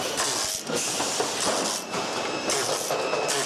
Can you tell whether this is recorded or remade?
recorded